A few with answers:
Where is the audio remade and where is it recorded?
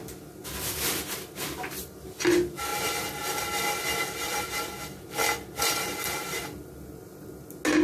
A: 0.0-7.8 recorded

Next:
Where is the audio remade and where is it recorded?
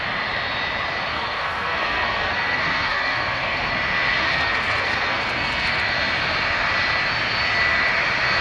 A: 0.0-1.1 recorded; 1.1-3.7 remade; 3.7-4.2 recorded; 4.2-5.8 remade; 5.8-8.4 recorded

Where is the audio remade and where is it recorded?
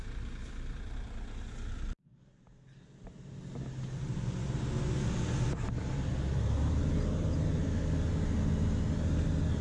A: 0.0-9.6 recorded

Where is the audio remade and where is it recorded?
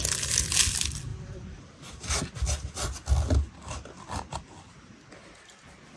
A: 0.0-6.0 recorded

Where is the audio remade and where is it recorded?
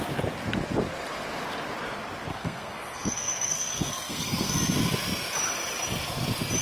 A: 0.0-2.3 recorded; 2.3-4.5 remade; 4.5-6.6 recorded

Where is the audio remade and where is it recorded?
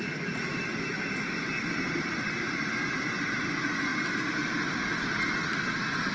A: 0.0-6.1 recorded